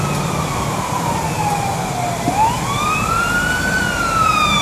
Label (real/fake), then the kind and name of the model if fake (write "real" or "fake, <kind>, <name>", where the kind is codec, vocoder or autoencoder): fake, vocoder, BigVGAN v2